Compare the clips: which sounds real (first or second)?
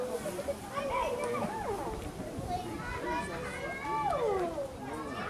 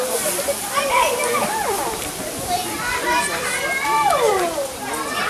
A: first